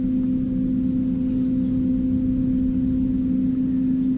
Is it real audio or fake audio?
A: real